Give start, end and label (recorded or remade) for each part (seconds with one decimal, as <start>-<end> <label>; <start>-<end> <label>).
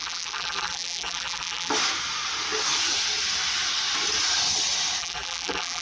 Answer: 0.0-1.7 remade; 1.7-5.0 recorded; 5.0-5.8 remade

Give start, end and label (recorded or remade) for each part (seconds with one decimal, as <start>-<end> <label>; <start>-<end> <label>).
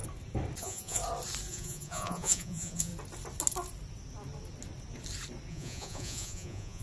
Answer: 0.0-0.6 recorded; 0.6-1.0 remade; 1.0-1.5 recorded; 1.5-2.9 remade; 2.9-5.5 recorded; 5.5-6.8 remade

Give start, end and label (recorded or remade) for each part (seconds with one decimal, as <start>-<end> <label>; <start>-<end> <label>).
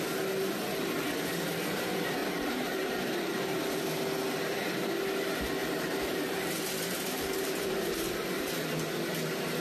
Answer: 0.0-2.2 recorded; 2.2-3.8 remade; 3.8-5.6 recorded; 5.6-8.7 remade; 8.7-9.6 recorded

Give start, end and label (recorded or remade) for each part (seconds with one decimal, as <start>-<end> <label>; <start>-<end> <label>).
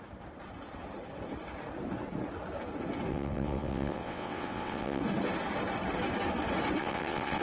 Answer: 0.0-3.1 recorded; 3.1-5.0 remade; 5.0-6.8 recorded; 6.8-7.4 remade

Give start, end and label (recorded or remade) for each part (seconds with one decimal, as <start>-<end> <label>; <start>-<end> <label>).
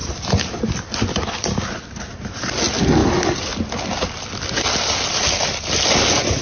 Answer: 0.0-6.4 recorded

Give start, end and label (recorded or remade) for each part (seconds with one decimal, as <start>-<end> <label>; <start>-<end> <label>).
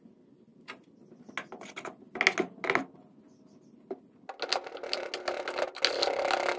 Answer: 0.0-6.6 recorded